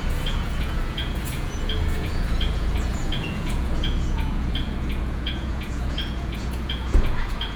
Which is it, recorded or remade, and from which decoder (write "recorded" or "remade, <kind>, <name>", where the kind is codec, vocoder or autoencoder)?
remade, vocoder, Vocos